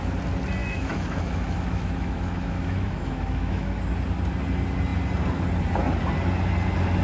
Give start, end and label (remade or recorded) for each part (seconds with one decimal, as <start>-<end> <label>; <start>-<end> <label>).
0.0-0.6 recorded; 0.6-3.8 remade; 3.8-7.0 recorded